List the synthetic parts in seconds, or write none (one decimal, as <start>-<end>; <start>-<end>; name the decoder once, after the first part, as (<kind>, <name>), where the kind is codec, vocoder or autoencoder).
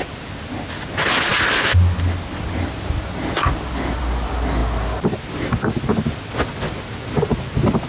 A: 5.9-6.5 (vocoder, BigVGAN v2)